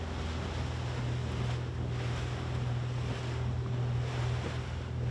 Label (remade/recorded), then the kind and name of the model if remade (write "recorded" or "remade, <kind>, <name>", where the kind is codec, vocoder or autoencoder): recorded